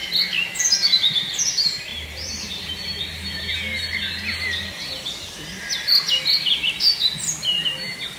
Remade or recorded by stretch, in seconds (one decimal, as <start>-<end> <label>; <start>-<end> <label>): 0.0-1.9 recorded; 1.9-3.0 remade; 3.0-8.2 recorded